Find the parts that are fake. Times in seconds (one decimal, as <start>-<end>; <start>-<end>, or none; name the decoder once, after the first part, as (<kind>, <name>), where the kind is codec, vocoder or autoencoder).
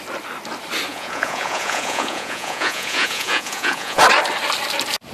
0.9-4.0 (vocoder, Vocos)